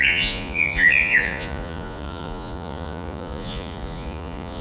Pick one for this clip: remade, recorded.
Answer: remade